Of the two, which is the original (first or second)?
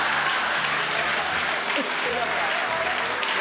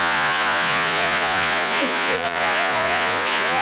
first